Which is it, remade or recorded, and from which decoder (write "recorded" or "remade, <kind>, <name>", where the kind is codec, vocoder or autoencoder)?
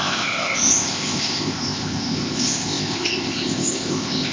remade, codec, ZipCodec